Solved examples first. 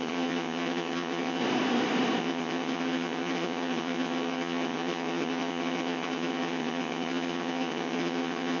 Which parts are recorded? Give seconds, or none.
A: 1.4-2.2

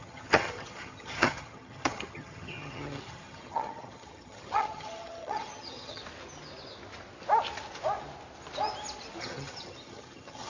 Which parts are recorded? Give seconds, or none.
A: 6.0-9.2

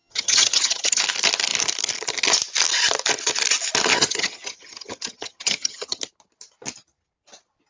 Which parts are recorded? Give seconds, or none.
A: 1.0-3.9; 6.0-7.7

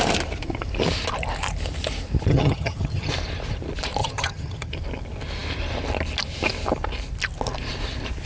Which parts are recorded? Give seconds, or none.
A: 0.0-2.3; 3.1-4.0; 4.7-8.3

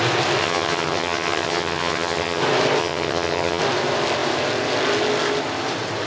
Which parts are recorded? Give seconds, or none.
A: 0.0-0.4; 2.4-2.8; 3.6-6.1

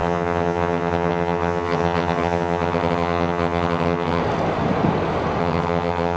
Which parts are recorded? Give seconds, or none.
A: 4.2-5.4

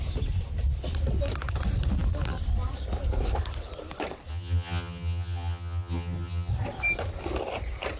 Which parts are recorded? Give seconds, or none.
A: 0.0-4.3; 6.5-8.0